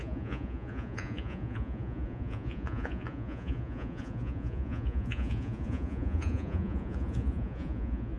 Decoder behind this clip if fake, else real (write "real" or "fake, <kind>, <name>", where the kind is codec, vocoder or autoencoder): fake, vocoder, Vocos